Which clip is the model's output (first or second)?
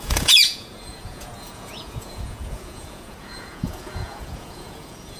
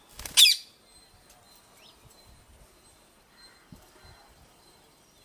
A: first